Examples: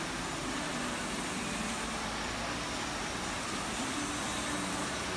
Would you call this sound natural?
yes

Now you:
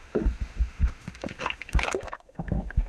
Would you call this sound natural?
no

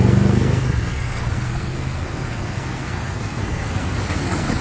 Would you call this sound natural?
no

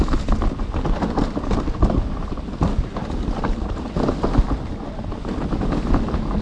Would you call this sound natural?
yes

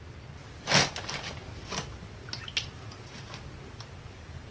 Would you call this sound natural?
yes